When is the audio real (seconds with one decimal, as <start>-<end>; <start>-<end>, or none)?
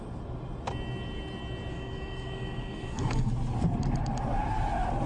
0.0-1.7; 3.3-5.1